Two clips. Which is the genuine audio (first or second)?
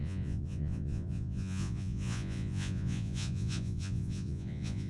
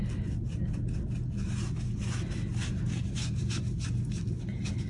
second